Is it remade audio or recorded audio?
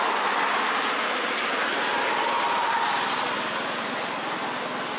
recorded